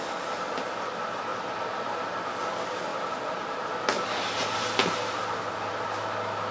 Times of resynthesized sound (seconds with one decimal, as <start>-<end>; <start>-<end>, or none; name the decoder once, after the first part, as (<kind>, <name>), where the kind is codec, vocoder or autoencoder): 1.3-2.3 (vocoder, BigVGAN v2); 2.9-3.7